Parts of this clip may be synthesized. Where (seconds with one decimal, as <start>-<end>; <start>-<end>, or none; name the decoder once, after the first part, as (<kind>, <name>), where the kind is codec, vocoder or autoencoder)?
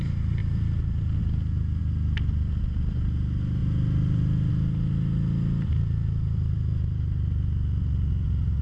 3.6-4.5 (vocoder, BigVGAN v2)